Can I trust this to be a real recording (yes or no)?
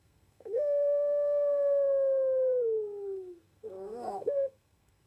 no